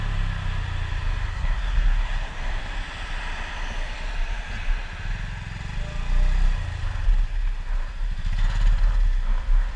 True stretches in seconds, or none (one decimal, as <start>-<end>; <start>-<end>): 0.0-1.3; 2.4-9.8